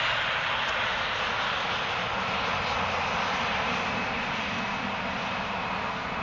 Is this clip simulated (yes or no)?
no